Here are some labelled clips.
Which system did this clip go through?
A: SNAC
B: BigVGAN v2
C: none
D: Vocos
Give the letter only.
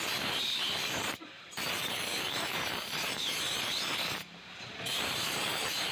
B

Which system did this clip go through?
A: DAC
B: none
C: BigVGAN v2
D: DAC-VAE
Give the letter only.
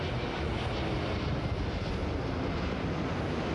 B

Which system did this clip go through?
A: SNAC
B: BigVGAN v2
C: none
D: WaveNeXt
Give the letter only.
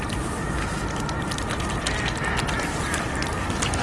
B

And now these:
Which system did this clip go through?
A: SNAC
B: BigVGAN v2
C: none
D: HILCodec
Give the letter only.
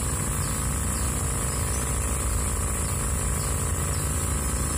C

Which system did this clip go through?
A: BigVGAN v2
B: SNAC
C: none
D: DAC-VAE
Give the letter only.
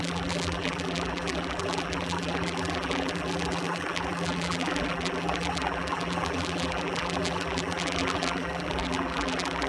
A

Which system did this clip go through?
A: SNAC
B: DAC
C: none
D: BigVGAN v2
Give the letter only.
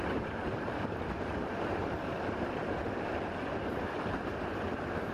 D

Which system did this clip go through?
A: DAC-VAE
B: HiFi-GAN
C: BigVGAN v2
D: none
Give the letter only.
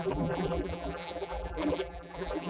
C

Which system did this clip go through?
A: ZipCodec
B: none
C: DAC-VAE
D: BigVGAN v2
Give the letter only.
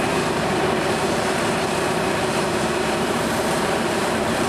D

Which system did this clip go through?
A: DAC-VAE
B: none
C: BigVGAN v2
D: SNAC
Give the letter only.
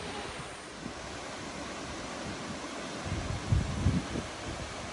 B